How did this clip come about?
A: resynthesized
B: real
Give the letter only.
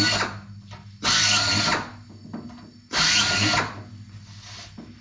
B